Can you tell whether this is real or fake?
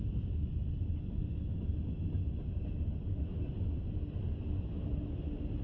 real